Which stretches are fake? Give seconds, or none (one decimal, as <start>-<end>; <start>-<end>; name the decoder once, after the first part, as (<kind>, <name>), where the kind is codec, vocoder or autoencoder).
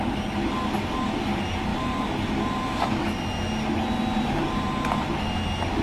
none